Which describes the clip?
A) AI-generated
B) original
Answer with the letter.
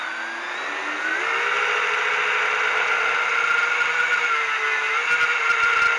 B